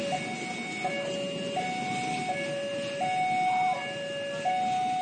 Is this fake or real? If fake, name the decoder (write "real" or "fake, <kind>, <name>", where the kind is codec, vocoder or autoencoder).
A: real